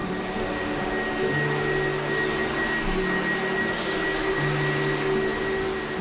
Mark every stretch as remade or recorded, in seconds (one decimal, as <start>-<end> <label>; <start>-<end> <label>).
0.0-0.5 remade; 0.5-6.0 recorded